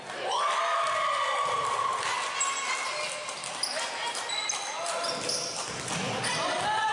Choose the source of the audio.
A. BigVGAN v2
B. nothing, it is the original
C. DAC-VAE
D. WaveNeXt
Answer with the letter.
B